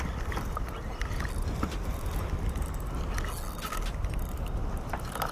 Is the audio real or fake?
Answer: real